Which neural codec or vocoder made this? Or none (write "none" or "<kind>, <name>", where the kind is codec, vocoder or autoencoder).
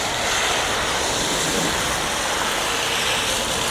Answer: none